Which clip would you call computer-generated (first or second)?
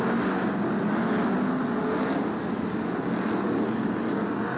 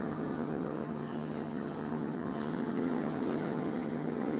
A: second